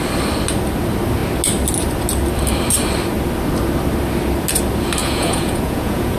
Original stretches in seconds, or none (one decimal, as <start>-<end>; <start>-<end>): 0.0-5.0